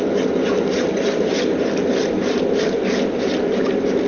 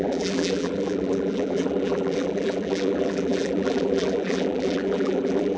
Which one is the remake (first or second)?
second